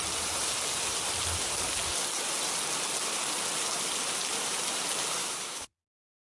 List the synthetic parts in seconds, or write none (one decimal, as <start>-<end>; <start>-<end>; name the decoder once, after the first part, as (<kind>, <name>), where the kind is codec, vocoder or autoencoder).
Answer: 5.2-5.7 (autoencoder, DAC-VAE)